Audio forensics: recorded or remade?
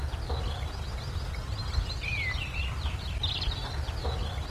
recorded